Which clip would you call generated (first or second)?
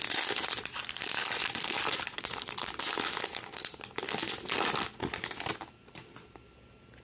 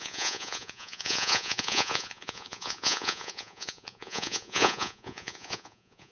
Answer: second